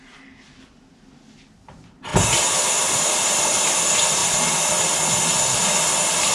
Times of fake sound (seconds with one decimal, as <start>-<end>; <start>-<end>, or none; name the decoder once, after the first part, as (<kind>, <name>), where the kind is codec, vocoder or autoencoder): none